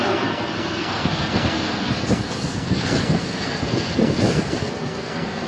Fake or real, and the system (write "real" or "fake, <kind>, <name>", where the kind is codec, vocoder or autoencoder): fake, codec, SNAC